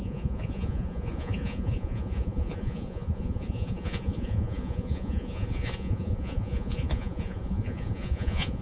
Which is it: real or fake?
fake